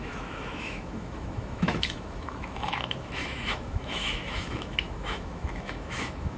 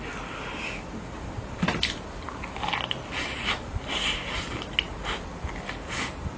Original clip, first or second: second